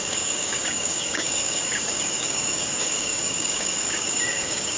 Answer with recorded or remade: remade